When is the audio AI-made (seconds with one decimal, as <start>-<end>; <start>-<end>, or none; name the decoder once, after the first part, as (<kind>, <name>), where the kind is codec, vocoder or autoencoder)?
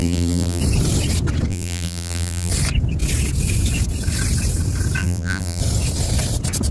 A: 0.0-0.6 (vocoder, BigVGAN v2); 1.5-2.5; 5.0-5.6